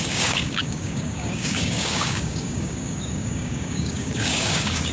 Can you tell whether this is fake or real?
fake